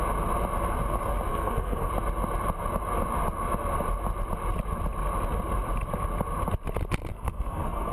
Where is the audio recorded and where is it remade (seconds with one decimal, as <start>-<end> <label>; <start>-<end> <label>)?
0.0-1.3 recorded; 1.3-1.9 remade; 1.9-7.1 recorded; 7.1-7.9 remade